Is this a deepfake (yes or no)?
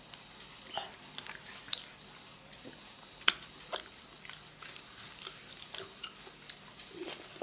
no